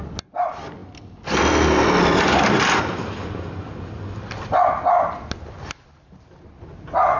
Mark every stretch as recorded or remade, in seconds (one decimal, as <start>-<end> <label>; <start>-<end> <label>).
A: 0.0-7.2 recorded

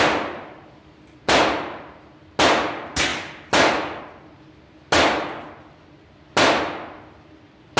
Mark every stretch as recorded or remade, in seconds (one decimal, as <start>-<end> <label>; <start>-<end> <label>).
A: 0.0-3.1 recorded; 3.1-4.0 remade; 4.0-7.8 recorded

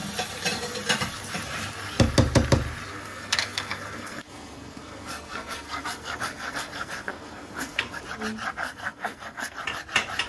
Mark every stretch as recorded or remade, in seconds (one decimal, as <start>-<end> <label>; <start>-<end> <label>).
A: 0.0-2.9 recorded; 2.9-8.0 remade; 8.0-8.6 recorded; 8.6-9.6 remade; 9.6-10.3 recorded

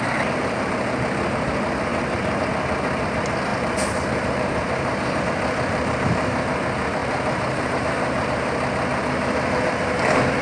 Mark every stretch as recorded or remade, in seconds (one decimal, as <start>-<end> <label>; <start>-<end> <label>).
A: 0.0-1.9 recorded; 1.9-2.5 remade; 2.5-3.5 recorded; 3.5-5.2 remade; 5.2-7.0 recorded; 7.0-7.8 remade; 7.8-10.4 recorded

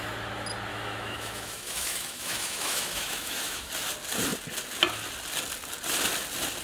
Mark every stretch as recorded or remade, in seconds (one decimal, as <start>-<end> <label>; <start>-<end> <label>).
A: 0.0-0.7 recorded; 0.7-3.7 remade; 3.7-6.6 recorded